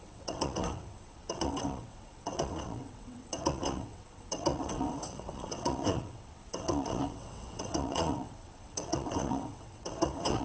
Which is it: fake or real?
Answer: fake